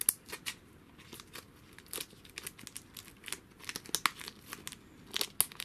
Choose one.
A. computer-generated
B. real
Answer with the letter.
B